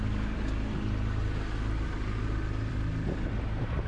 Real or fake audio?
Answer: fake